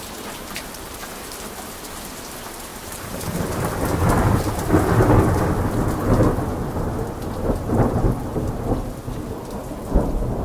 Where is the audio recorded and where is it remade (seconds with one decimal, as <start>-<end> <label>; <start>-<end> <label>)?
0.0-0.4 recorded; 0.4-1.0 remade; 1.0-2.7 recorded; 2.7-3.2 remade; 3.2-7.4 recorded; 7.4-8.6 remade; 8.6-10.4 recorded